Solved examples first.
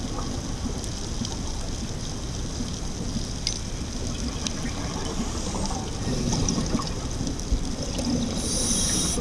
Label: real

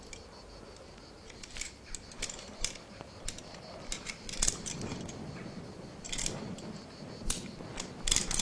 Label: real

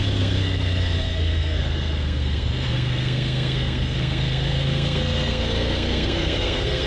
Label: fake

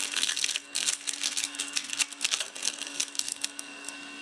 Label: fake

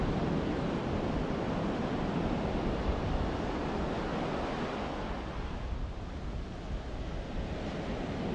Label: real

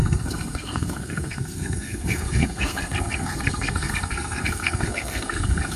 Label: fake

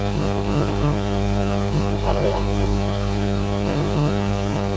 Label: fake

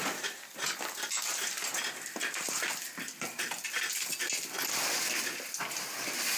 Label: real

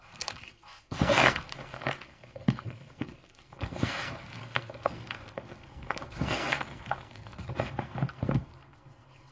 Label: fake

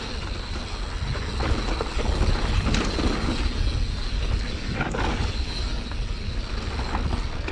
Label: real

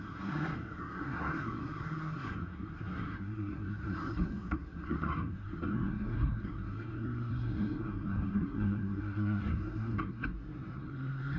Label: fake